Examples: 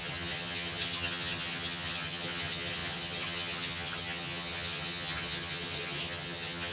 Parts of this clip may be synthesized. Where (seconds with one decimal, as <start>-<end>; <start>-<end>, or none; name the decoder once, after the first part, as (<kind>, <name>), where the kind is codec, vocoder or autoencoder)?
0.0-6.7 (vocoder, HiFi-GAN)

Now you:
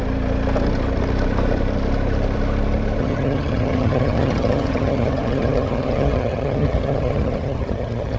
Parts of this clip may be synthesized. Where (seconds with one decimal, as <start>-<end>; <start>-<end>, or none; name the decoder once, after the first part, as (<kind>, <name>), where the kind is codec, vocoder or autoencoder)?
3.0-8.2 (vocoder, HiFi-GAN)

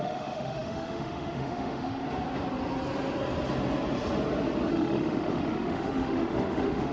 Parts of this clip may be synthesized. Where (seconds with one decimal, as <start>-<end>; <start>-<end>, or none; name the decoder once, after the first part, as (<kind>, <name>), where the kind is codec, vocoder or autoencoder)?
0.0-2.0 (autoencoder, DAC-VAE); 4.7-6.9